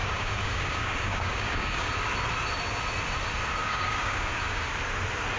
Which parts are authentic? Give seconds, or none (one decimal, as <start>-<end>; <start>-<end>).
1.9-3.6; 4.6-5.4